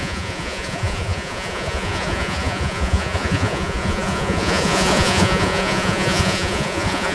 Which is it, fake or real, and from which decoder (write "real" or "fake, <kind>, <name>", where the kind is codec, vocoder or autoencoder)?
fake, vocoder, Vocos